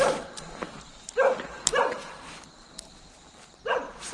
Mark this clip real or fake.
fake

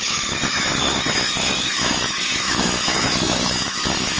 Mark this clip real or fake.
fake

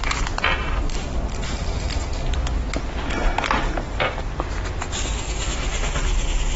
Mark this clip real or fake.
real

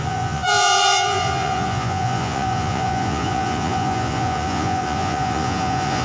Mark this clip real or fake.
fake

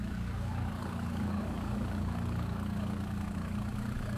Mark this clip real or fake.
fake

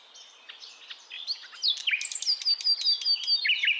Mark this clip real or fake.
real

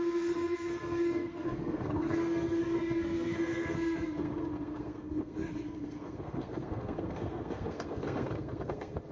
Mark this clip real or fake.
fake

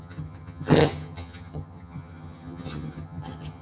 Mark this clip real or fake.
fake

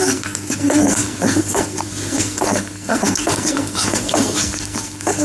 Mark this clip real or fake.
fake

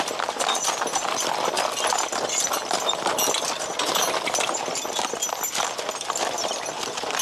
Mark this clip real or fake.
real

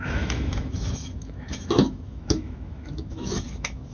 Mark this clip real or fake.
fake